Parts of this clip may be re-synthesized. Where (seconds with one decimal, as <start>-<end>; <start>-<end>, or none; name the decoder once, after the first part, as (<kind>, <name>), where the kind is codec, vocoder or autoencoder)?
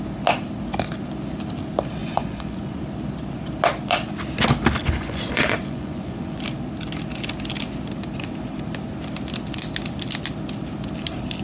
2.0-2.8 (vocoder, Vocos); 4.8-6.4